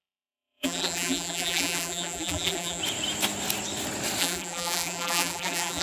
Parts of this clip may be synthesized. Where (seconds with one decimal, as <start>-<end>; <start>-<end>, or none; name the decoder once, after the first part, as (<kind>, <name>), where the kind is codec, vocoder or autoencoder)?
0.0-2.8 (vocoder, BigVGAN v2); 4.2-5.8